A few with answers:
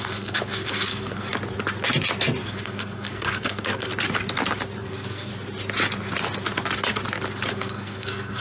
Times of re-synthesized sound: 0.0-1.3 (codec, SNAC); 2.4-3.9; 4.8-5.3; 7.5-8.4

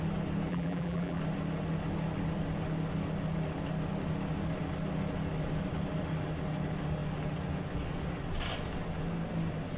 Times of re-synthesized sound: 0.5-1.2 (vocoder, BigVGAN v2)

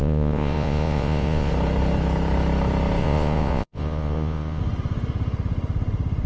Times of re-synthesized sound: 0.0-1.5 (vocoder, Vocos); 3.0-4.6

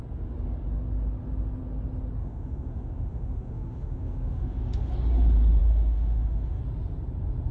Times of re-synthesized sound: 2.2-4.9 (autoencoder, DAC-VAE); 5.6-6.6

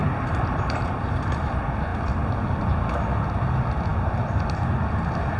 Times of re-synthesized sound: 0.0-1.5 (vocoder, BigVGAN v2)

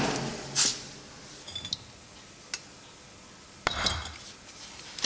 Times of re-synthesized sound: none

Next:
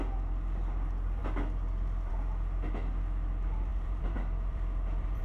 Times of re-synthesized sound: 3.7-5.2 (vocoder, BigVGAN v2)

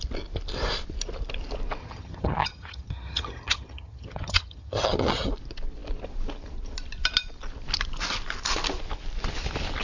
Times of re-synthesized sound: 1.8-5.3 (vocoder, HiFi-GAN)